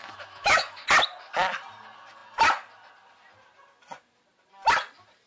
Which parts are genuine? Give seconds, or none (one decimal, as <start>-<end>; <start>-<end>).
0.8-5.3